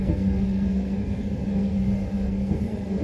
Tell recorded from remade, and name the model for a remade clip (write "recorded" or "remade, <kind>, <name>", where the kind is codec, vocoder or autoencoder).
remade, codec, SNAC